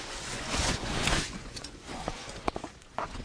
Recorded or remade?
remade